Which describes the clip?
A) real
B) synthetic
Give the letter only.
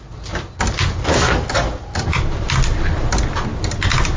A